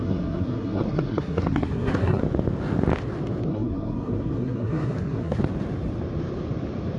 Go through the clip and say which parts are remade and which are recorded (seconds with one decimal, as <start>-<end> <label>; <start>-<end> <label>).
0.0-2.2 remade; 2.2-3.5 recorded; 3.5-5.4 remade; 5.4-7.0 recorded